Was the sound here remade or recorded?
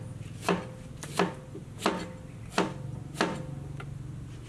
recorded